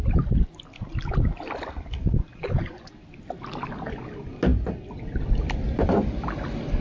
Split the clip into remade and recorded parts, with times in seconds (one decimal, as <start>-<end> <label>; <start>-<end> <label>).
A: 0.0-2.3 recorded; 2.3-2.9 remade; 2.9-6.8 recorded